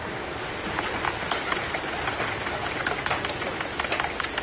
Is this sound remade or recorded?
recorded